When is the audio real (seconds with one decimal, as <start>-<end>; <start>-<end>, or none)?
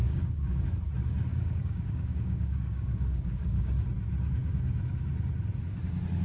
0.6-1.3; 3.7-6.2